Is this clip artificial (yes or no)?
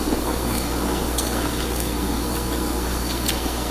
yes